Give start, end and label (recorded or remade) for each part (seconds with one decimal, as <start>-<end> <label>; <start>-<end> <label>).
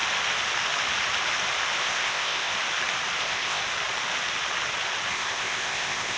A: 0.0-1.8 recorded; 1.8-2.5 remade; 2.5-3.2 recorded; 3.2-3.6 remade; 3.6-5.1 recorded; 5.1-6.2 remade